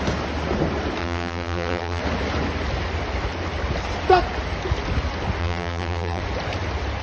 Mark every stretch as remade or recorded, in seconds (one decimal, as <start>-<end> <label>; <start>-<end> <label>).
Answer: 0.0-1.0 recorded; 1.0-2.0 remade; 2.0-5.4 recorded; 5.4-6.2 remade; 6.2-7.0 recorded